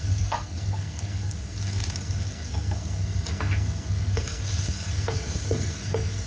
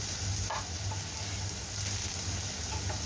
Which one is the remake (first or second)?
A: first